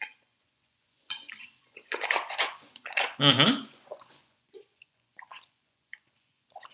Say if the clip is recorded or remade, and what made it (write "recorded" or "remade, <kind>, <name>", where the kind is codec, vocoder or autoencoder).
remade, vocoder, Vocos